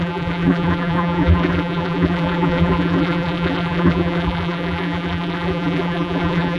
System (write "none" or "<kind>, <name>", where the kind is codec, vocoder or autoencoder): vocoder, BigVGAN v2